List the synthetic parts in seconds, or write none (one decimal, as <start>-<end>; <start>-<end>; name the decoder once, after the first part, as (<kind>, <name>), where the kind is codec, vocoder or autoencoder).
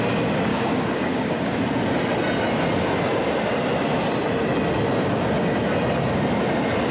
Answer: 0.5-1.6 (codec, DAC)